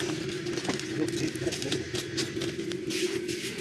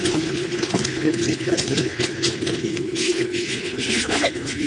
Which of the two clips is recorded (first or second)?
first